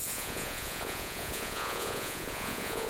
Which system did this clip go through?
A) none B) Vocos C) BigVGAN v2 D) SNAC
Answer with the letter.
B